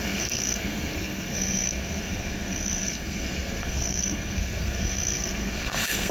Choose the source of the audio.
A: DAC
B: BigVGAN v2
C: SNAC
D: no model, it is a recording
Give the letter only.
C